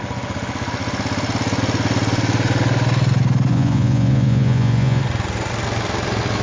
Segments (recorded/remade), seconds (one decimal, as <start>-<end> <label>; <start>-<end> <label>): 0.0-3.5 recorded; 3.5-5.0 remade; 5.0-6.4 recorded